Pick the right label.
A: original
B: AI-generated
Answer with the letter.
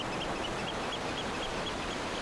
A